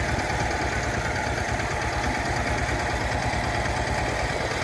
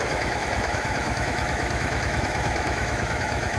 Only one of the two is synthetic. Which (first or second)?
second